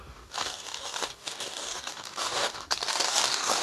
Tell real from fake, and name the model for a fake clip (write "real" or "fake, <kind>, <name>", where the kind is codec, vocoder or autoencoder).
fake, codec, DAC